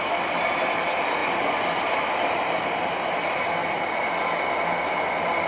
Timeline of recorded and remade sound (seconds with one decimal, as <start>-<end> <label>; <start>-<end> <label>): 0.0-5.5 recorded